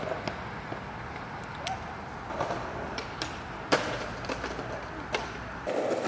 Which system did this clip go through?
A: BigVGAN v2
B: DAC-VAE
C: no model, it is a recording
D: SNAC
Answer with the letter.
C